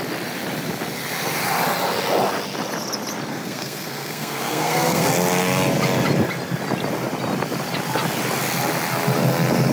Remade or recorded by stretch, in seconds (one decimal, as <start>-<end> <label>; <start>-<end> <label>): 0.0-3.3 recorded; 3.3-5.1 remade; 5.1-9.7 recorded